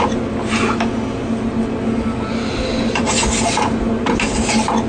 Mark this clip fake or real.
real